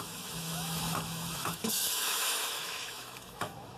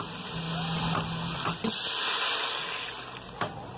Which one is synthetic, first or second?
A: first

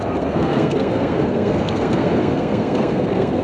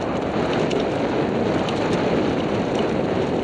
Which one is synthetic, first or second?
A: first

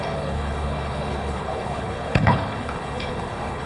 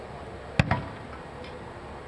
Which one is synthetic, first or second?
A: first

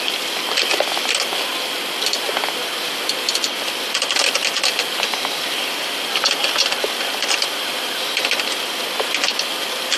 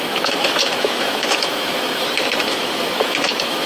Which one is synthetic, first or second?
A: second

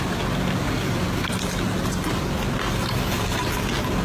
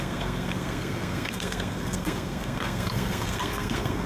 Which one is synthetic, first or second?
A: second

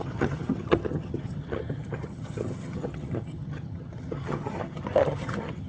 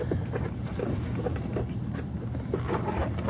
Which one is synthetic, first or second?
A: first